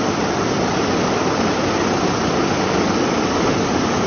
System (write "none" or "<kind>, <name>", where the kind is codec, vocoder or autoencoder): none